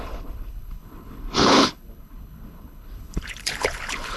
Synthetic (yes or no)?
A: yes